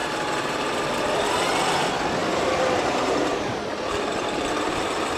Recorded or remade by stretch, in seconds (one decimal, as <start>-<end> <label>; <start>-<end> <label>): 0.0-0.7 remade; 0.7-2.2 recorded; 2.2-5.2 remade